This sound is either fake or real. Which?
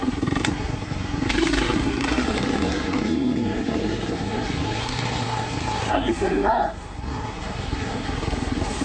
fake